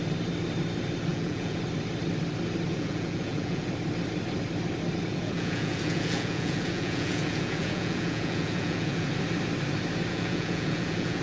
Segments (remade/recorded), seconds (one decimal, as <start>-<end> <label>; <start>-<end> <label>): 0.0-1.1 recorded; 1.1-1.6 remade; 1.6-2.7 recorded; 2.7-3.7 remade; 3.7-5.1 recorded; 5.1-9.1 remade; 9.1-10.1 recorded; 10.1-11.2 remade